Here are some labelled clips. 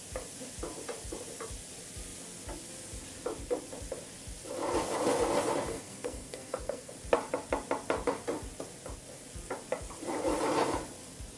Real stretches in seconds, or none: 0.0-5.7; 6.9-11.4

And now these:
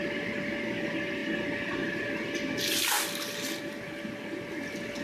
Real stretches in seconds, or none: 0.0-5.0

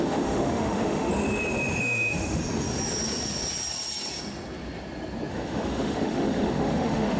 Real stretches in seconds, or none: 1.1-1.8; 2.4-5.3

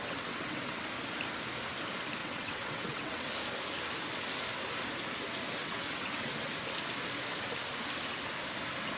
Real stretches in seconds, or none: 0.8-2.2; 3.3-5.6; 6.5-9.0

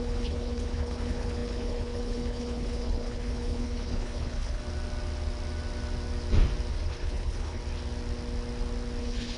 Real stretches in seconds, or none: 4.6-6.7; 7.6-9.0

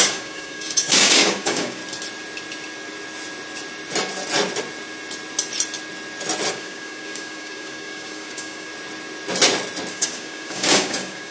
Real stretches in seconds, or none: 1.8-6.5; 8.7-9.9